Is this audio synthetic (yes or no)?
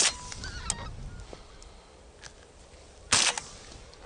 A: no